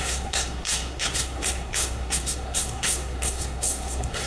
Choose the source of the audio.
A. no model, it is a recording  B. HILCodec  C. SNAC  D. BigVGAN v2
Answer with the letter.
C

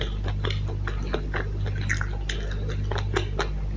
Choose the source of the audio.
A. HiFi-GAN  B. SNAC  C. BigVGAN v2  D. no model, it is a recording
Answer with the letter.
D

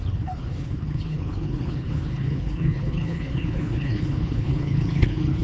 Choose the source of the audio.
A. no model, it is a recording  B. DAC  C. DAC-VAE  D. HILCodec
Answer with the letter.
D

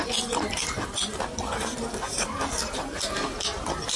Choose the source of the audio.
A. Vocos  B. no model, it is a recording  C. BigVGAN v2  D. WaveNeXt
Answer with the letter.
B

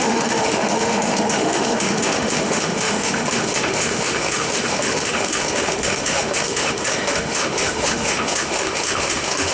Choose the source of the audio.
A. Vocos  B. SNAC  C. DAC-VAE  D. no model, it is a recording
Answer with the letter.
C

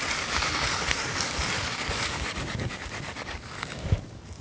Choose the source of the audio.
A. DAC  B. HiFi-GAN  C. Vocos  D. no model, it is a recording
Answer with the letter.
A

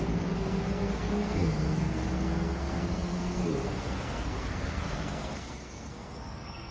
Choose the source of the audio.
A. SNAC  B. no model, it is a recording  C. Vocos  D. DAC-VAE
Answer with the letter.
A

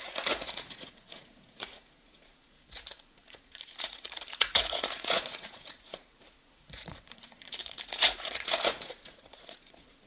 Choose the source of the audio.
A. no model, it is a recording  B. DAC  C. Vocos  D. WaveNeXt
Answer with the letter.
C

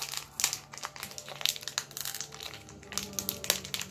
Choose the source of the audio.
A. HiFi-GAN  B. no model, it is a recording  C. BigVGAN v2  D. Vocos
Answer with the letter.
B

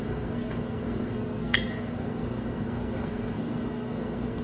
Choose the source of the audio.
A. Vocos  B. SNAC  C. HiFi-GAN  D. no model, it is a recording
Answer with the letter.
B